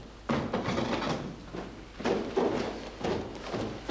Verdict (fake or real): real